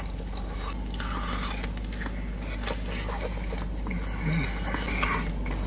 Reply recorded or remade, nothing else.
recorded